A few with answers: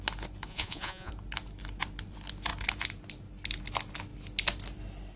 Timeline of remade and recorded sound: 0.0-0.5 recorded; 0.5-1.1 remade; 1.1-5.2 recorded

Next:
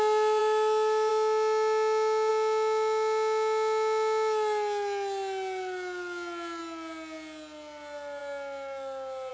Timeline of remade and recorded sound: 0.0-9.3 recorded

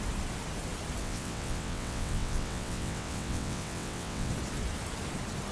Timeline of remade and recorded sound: 0.0-1.0 recorded; 1.0-4.3 remade; 4.3-5.5 recorded

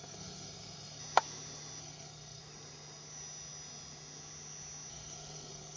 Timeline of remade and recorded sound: 0.0-1.0 remade; 1.0-1.8 recorded; 1.8-2.4 remade; 2.4-4.9 recorded; 4.9-5.8 remade

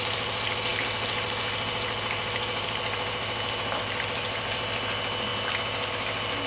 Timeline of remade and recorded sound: 0.0-6.5 recorded

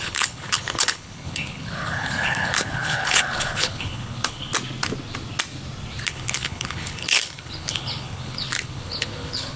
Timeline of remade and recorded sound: 0.0-4.5 remade; 4.5-6.1 recorded; 6.1-9.6 remade

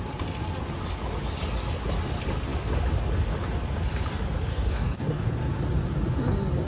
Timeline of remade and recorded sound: 0.0-4.5 recorded; 4.5-5.3 remade; 5.3-6.7 recorded

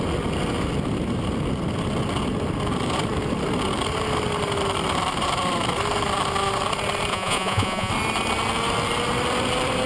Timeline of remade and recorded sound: 0.0-7.1 recorded; 7.1-7.9 remade; 7.9-9.9 recorded